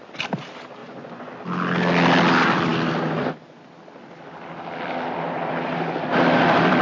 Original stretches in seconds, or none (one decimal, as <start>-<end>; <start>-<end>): 0.0-0.8; 1.3-6.8